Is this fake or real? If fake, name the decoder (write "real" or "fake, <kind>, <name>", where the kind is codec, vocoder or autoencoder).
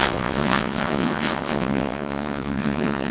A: fake, vocoder, WaveNeXt